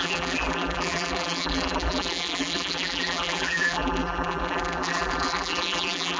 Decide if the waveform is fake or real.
fake